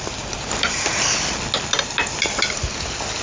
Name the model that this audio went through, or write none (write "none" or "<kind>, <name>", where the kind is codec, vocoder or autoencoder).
none